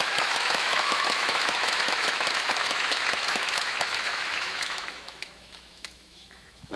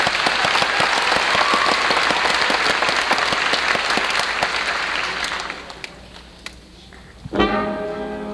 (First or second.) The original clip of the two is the second